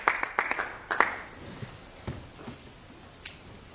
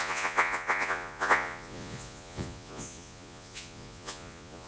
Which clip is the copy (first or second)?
second